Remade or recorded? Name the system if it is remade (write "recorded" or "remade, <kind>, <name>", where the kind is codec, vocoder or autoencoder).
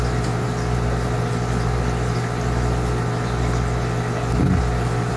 recorded